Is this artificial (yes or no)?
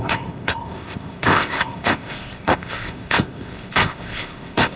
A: yes